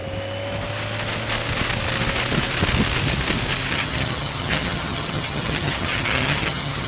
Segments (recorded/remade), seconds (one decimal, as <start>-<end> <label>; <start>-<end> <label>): 0.0-3.7 recorded; 3.7-6.9 remade